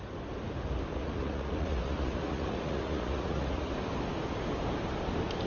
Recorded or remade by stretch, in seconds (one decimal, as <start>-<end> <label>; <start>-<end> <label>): 0.0-0.9 recorded; 0.9-3.7 remade; 3.7-5.5 recorded